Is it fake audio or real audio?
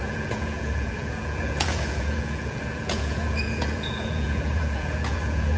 fake